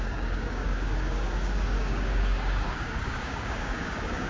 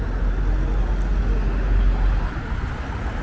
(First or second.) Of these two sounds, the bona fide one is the second